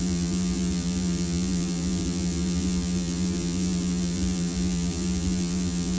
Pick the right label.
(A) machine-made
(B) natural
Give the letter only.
A